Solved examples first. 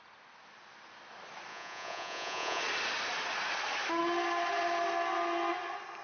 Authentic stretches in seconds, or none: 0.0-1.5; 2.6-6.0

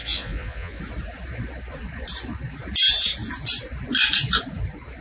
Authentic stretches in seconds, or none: 0.8-5.0

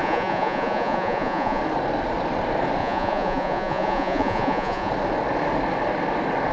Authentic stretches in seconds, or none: 1.6-2.8; 4.9-6.5

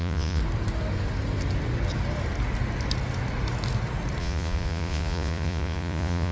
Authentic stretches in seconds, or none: 0.4-4.2

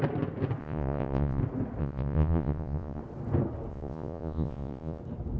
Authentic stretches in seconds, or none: 0.0-0.6; 1.4-1.8; 3.0-3.7; 5.0-5.4

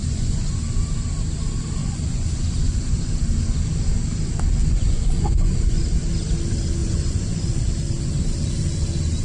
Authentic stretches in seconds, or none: 0.6-1.8; 3.1-4.6; 5.8-6.8; 7.6-9.2